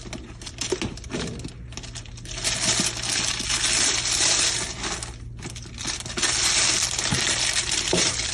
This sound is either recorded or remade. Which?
recorded